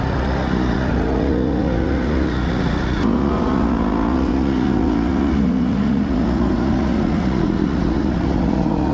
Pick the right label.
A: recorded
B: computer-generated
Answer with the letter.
B